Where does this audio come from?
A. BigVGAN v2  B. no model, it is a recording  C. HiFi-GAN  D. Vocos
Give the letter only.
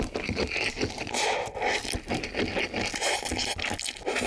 B